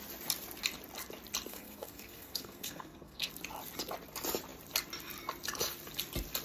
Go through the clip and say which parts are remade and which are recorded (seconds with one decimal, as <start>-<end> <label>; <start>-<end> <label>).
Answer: 0.0-1.5 recorded; 1.5-3.3 remade; 3.3-6.4 recorded

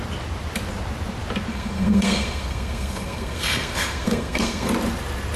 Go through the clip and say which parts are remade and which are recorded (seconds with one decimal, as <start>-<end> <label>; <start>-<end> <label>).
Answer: 0.0-1.5 recorded; 1.5-4.7 remade; 4.7-5.4 recorded